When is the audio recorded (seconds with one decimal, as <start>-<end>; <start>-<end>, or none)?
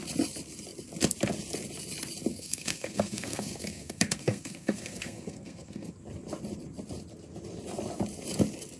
0.0-2.3; 5.9-8.8